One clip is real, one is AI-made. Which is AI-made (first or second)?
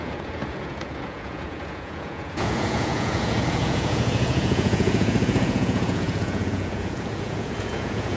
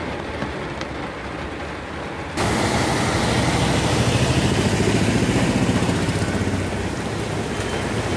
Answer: first